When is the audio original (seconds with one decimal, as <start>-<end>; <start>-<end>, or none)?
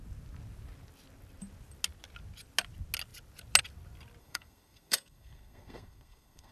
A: 0.0-4.2